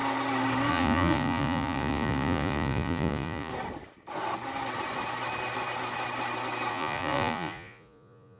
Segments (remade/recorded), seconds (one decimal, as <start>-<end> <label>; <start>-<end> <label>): 0.0-0.7 recorded; 0.7-3.5 remade; 3.5-6.7 recorded; 6.7-8.4 remade